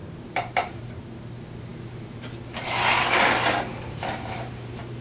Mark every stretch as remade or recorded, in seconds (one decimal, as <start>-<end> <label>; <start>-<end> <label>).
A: 0.0-0.8 remade; 0.8-3.7 recorded; 3.7-5.0 remade